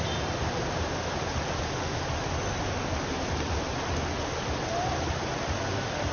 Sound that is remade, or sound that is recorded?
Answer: recorded